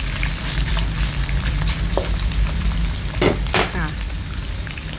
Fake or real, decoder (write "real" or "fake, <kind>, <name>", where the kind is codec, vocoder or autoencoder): fake, vocoder, BigVGAN v2